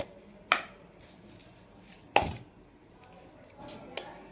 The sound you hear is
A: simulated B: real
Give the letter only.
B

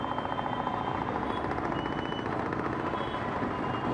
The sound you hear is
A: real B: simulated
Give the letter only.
A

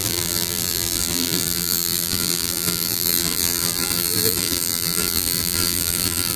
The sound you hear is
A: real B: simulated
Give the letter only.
B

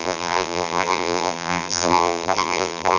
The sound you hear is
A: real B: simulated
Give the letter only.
B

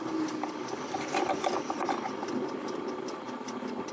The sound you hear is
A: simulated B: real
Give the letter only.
B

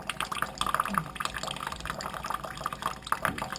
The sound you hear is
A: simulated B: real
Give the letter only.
B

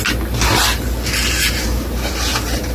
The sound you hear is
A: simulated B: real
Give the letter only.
B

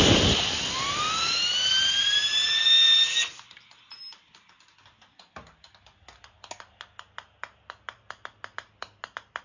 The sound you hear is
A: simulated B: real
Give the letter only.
B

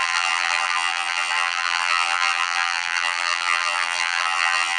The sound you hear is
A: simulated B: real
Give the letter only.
A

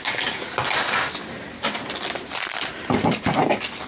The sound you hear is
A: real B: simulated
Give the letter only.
A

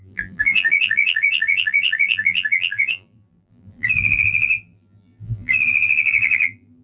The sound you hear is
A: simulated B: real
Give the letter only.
A